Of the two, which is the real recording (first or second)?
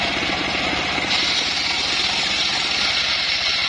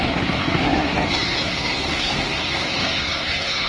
first